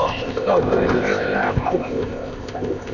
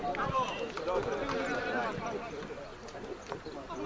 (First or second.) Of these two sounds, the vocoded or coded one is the first